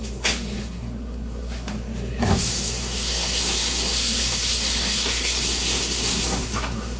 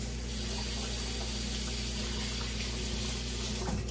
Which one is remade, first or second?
first